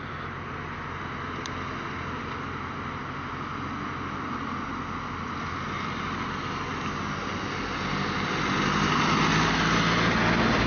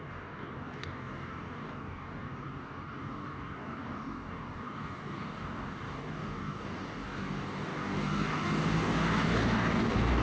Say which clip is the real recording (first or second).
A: first